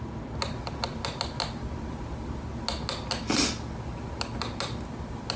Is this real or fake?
real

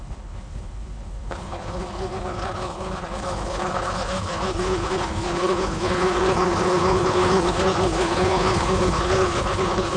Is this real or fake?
fake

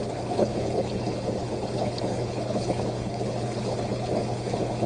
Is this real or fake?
fake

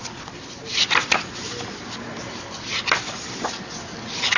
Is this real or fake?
real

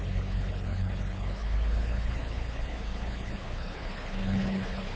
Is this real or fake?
fake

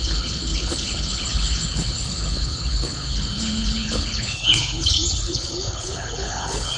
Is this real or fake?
fake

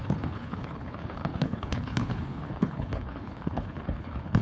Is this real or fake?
fake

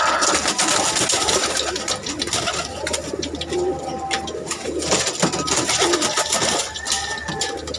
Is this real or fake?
real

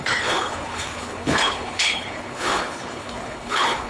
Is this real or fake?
fake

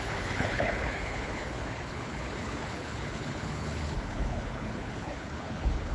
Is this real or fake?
fake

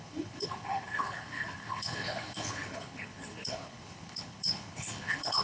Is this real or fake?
fake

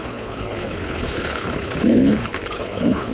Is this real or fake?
fake